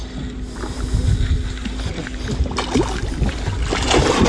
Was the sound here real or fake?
real